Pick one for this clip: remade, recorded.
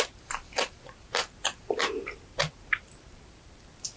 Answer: remade